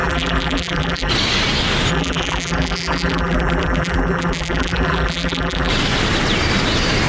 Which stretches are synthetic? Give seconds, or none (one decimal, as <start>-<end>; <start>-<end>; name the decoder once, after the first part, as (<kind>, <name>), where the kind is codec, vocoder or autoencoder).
0.0-1.1 (vocoder, BigVGAN v2); 1.9-5.7